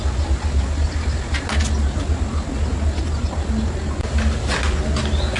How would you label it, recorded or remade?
recorded